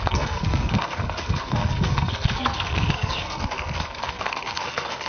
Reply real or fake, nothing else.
fake